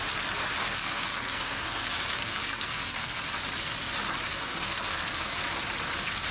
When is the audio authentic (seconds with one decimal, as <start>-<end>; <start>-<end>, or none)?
0.0-0.6; 3.2-4.3; 5.4-6.3